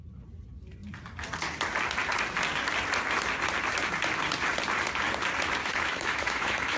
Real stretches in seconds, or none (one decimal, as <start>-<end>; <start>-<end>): 0.0-5.6